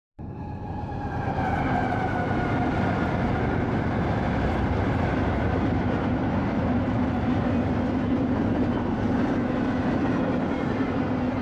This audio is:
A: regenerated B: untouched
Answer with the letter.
B